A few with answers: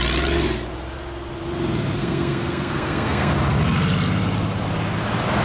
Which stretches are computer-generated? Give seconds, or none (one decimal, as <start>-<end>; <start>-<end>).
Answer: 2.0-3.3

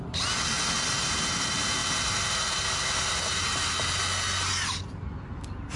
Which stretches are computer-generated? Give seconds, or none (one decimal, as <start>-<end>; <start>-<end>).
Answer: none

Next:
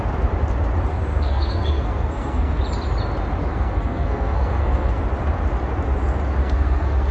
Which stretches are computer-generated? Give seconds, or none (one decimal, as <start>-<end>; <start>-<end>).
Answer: 0.9-2.6; 3.4-5.0; 6.4-7.1

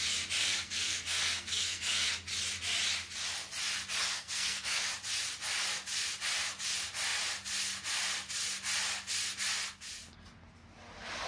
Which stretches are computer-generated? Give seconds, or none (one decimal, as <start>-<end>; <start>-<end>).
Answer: 0.4-2.1; 4.0-4.9

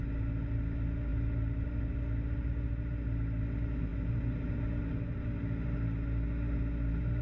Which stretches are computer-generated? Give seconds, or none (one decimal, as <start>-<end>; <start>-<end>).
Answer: none

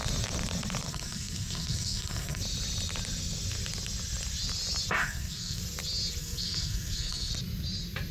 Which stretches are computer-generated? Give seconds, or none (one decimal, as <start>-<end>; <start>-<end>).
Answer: 0.9-2.4; 5.0-5.6; 6.2-7.3

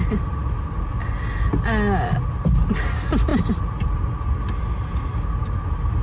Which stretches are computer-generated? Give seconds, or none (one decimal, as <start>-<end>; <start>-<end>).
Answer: none